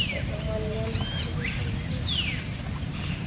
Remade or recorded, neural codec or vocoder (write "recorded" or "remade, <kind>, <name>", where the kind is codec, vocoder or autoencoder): recorded